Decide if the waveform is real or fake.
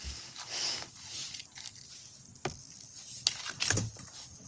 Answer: real